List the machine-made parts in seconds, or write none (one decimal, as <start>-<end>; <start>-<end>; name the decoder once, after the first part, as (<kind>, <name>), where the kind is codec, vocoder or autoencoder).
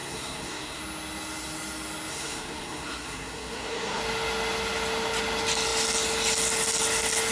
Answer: 0.0-0.8 (codec, SNAC); 2.1-4.0